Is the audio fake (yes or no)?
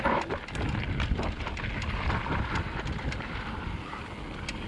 no